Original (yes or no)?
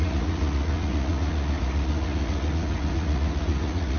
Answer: no